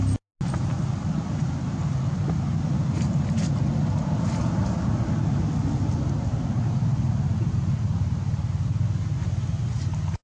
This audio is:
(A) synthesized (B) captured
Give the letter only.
B